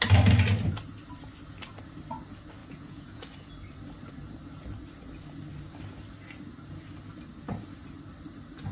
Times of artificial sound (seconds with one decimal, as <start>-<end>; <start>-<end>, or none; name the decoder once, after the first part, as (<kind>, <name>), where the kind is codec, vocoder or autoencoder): 2.6-3.5 (vocoder, Vocos)